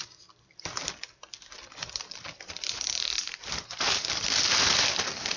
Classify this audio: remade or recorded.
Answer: remade